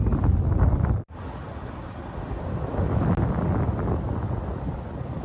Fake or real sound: real